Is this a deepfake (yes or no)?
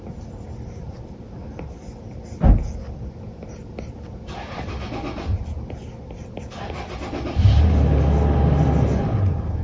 no